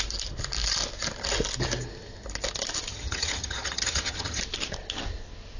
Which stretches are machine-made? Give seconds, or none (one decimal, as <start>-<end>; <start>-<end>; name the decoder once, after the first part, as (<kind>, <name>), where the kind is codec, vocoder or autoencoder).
2.9-4.4 (vocoder, HiFi-GAN)